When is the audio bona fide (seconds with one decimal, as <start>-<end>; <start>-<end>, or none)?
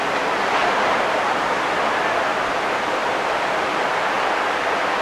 0.0-0.6; 1.8-2.3; 3.1-5.0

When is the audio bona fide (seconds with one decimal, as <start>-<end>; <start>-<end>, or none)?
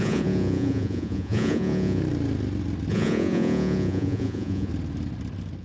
2.0-2.9; 4.7-5.6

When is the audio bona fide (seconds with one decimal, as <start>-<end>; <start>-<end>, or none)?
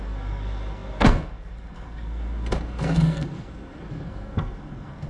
none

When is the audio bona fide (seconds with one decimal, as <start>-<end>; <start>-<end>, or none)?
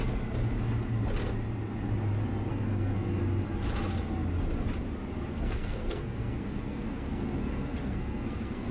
0.0-2.5; 3.2-5.3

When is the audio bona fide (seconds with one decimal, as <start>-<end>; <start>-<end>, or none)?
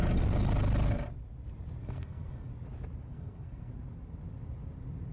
0.0-1.8; 2.5-3.1; 3.7-5.1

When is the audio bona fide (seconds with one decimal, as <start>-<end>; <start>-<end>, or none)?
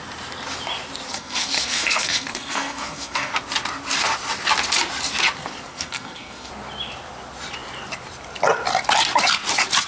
0.0-1.1; 3.3-5.7; 6.5-9.9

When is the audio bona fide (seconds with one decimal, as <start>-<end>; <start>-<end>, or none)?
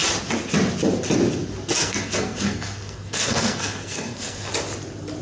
0.0-1.8; 4.5-5.2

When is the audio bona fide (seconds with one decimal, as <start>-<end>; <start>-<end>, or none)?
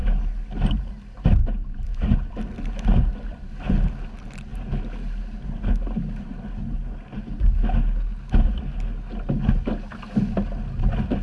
0.0-11.2